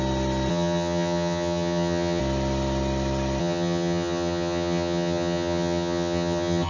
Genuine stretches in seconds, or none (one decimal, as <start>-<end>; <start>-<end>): 0.0-0.5; 2.2-3.4